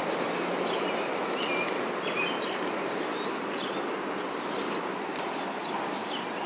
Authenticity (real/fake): real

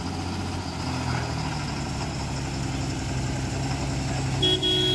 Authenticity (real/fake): real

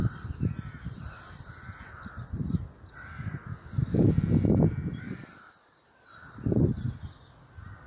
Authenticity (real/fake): real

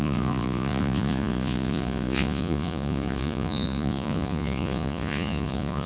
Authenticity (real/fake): fake